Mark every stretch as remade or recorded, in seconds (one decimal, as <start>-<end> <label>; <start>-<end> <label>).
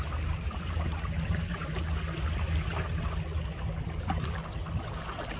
0.0-1.8 remade; 1.8-5.4 recorded